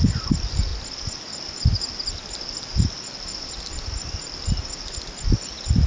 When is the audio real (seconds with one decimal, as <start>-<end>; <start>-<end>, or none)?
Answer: 0.0-5.9